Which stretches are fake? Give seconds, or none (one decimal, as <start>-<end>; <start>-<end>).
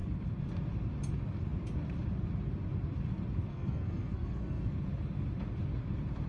3.5-4.7